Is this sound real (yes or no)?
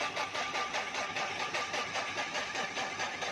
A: yes